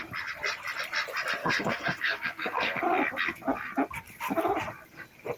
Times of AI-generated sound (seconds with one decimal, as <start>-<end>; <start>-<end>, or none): 1.4-2.8